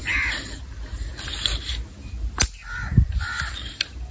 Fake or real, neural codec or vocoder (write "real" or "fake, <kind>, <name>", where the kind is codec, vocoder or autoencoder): real